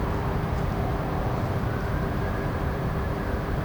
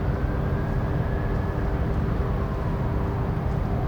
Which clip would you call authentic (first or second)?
second